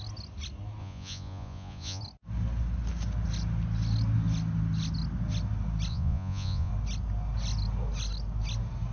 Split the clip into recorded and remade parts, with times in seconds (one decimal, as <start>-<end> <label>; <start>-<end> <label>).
0.0-0.8 recorded; 0.8-2.0 remade; 2.0-5.9 recorded; 5.9-6.7 remade; 6.7-8.9 recorded

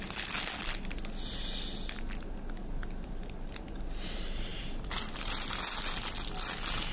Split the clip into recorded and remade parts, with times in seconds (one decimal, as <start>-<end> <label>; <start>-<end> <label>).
0.0-4.5 recorded; 4.5-5.3 remade; 5.3-6.9 recorded

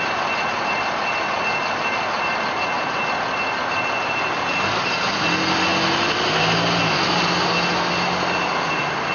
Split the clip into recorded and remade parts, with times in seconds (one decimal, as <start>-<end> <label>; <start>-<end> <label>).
0.0-9.1 recorded

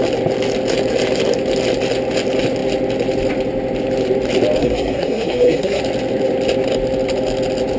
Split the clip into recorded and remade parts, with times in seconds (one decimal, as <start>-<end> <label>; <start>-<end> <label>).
0.0-4.6 recorded; 4.6-5.8 remade; 5.8-7.8 recorded

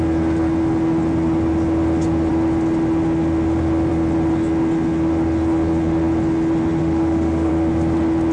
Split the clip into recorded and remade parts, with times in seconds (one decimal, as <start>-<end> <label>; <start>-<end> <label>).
0.0-6.8 recorded; 6.8-7.5 remade; 7.5-8.3 recorded